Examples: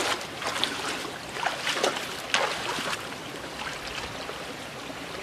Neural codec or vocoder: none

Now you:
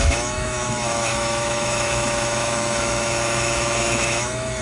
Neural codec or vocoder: autoencoder, DAC-VAE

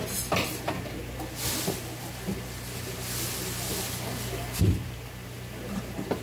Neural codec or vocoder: none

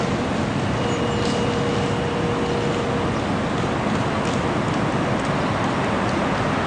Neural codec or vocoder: none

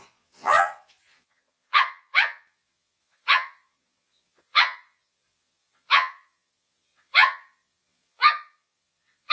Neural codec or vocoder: vocoder, Vocos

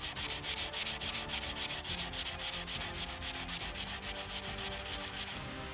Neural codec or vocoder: none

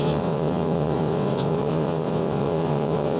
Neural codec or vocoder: vocoder, WaveNeXt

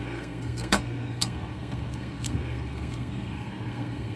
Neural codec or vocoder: codec, SNAC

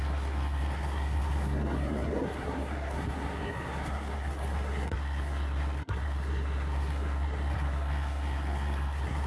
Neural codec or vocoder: codec, SNAC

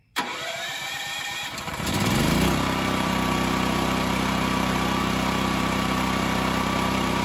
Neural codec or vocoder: vocoder, BigVGAN v2